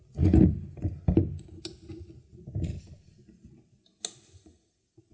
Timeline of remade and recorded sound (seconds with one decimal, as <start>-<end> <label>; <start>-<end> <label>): 0.0-5.1 recorded